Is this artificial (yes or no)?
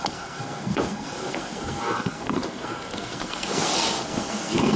yes